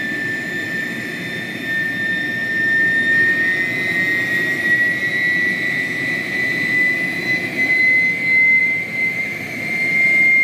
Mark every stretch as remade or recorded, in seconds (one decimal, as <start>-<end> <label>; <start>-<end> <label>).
0.0-8.6 recorded; 8.6-9.7 remade; 9.7-10.4 recorded